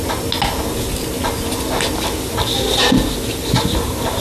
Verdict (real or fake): real